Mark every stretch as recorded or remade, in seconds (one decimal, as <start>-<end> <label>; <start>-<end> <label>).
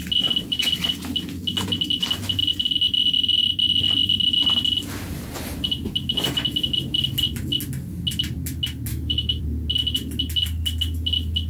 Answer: 0.0-8.9 recorded; 8.9-9.4 remade; 9.4-11.5 recorded